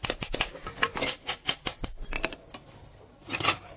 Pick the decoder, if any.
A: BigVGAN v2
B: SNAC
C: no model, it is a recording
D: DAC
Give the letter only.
C